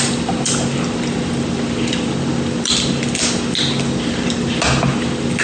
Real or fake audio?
real